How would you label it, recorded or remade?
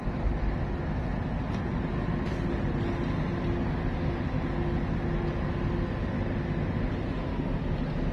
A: recorded